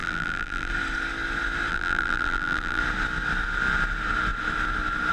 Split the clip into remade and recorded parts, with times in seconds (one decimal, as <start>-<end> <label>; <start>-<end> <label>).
0.0-0.7 remade; 0.7-1.7 recorded; 1.7-2.8 remade; 2.8-5.1 recorded

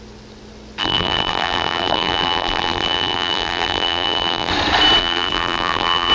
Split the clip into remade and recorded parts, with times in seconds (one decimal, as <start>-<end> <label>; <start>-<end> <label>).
0.0-0.8 recorded; 0.8-4.5 remade; 4.5-5.0 recorded; 5.0-6.1 remade